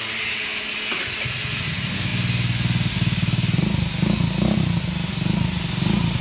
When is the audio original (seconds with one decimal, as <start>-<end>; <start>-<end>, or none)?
0.0-6.2